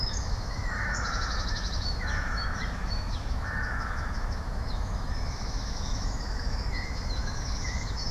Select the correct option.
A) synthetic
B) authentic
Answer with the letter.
A